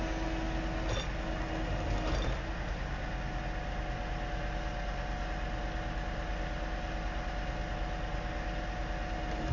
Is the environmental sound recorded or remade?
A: recorded